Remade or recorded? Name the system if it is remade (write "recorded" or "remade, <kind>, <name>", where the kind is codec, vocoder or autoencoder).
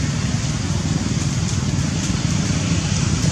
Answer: recorded